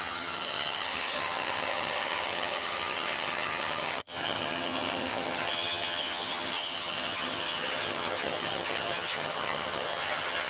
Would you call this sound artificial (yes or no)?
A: yes